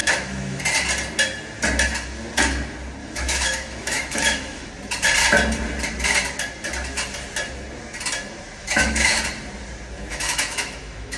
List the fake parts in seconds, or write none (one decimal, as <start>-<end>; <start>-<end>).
0.0-0.6; 3.0-4.7; 8.6-9.2; 10.1-11.2